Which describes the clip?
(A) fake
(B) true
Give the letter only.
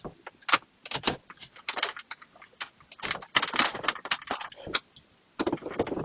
B